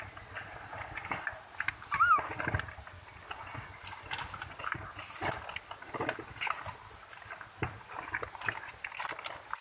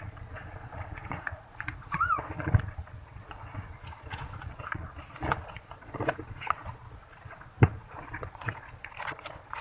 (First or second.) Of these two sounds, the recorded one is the first